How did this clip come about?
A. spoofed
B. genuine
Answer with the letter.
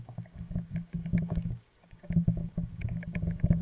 A